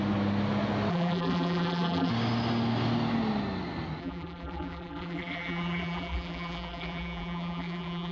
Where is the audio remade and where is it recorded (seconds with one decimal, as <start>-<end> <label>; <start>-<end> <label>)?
0.0-0.9 recorded; 0.9-2.1 remade; 2.1-4.0 recorded; 4.0-8.1 remade